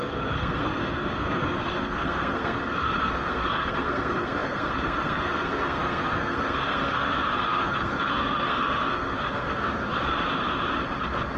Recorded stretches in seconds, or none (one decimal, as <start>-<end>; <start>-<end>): 10.3-11.4